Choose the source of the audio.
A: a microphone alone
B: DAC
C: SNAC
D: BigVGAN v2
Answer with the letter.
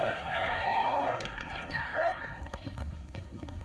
C